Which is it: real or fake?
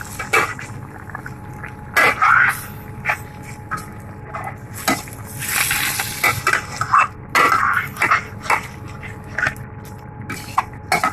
real